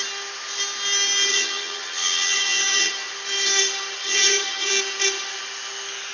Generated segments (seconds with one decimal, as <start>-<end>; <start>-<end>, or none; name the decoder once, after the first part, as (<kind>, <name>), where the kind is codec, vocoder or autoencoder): 1.3-2.9 (vocoder, HiFi-GAN); 4.0-4.7